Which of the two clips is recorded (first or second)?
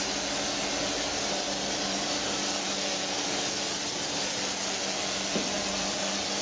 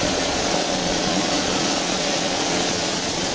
first